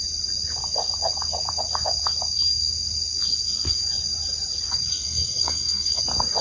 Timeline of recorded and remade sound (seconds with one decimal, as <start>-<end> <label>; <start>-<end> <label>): 0.0-4.9 recorded; 4.9-6.0 remade; 6.0-6.4 recorded